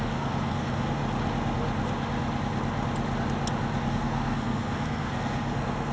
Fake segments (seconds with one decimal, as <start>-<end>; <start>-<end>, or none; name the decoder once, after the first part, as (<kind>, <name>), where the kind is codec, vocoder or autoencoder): 0.0-1.0 (codec, SNAC); 3.9-5.9